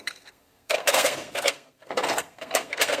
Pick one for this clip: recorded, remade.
remade